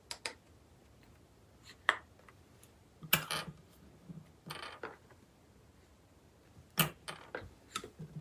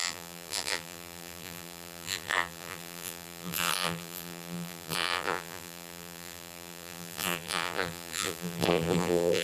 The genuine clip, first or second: first